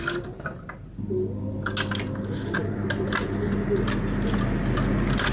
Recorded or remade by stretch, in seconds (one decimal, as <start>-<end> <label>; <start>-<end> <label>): 0.0-5.3 recorded